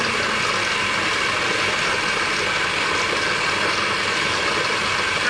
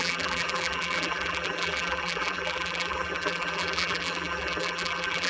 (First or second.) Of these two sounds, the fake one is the second